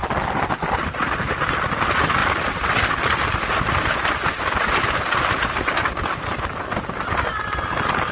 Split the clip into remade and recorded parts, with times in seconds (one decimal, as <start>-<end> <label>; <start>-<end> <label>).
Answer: 0.0-8.1 recorded